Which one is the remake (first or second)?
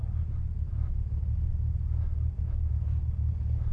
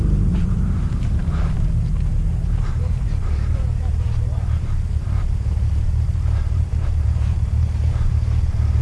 second